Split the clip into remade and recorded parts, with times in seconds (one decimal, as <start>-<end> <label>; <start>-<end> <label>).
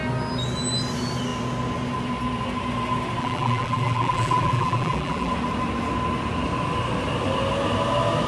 0.0-3.2 recorded; 3.2-5.3 remade; 5.3-8.3 recorded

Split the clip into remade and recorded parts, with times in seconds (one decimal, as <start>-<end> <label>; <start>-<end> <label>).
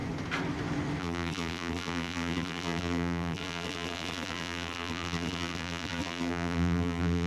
0.0-1.0 recorded; 1.0-7.3 remade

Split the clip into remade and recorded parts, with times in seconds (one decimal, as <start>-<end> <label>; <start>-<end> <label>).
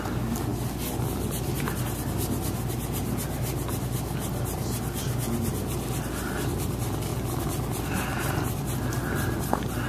0.0-9.9 recorded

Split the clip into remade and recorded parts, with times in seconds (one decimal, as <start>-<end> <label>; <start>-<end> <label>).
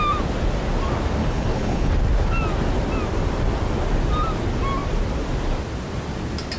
0.0-1.2 recorded; 1.2-1.9 remade; 1.9-6.6 recorded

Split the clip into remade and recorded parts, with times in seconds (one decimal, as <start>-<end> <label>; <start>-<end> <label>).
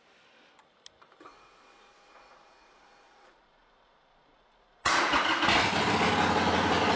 0.0-1.3 recorded; 1.3-5.2 remade; 5.2-7.0 recorded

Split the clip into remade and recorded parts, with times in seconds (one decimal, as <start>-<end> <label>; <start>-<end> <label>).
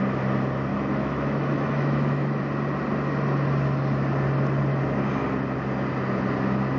0.0-0.7 recorded; 0.7-2.4 remade; 2.4-6.8 recorded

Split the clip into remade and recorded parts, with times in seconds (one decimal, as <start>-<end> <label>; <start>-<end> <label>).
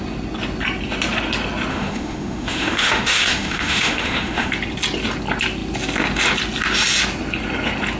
0.0-1.7 recorded; 1.7-4.5 remade; 4.5-8.0 recorded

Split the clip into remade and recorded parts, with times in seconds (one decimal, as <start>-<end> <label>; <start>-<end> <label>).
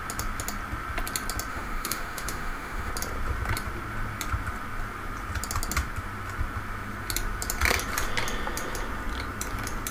0.0-1.5 recorded; 1.5-2.9 remade; 2.9-9.9 recorded